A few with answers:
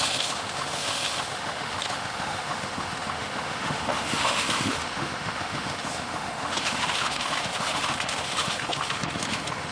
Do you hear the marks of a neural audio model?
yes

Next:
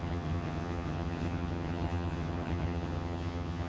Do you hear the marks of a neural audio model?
yes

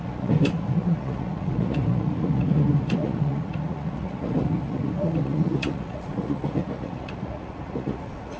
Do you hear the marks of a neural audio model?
yes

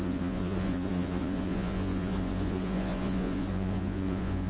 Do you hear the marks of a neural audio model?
yes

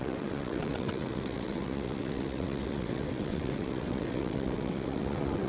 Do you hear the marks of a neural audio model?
yes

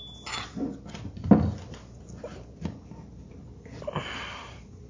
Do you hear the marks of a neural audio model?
no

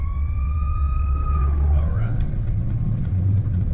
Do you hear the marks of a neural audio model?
yes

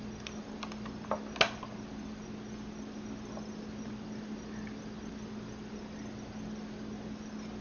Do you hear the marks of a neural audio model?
no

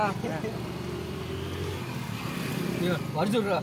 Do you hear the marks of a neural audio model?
no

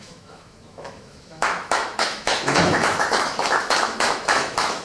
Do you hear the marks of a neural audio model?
yes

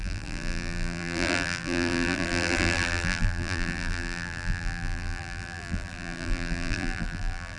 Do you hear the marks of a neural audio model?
yes